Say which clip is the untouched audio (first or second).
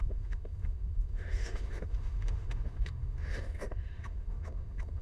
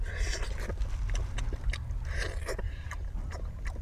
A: second